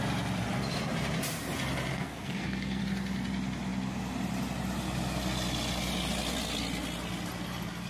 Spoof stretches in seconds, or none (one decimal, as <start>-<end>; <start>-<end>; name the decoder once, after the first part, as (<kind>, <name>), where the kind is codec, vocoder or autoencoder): 1.9-2.8 (codec, SNAC)